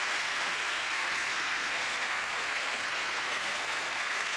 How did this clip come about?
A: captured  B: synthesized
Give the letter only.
B